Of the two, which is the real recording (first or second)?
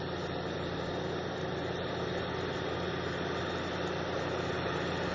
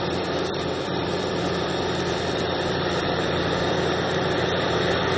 first